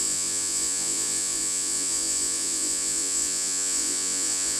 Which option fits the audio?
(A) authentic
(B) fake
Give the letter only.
B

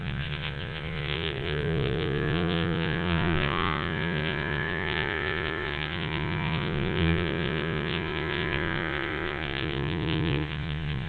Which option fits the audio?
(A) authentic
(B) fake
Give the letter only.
B